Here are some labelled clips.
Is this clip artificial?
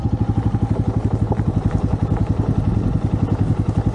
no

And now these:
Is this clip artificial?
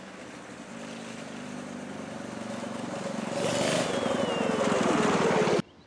no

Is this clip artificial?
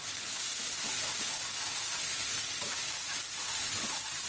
no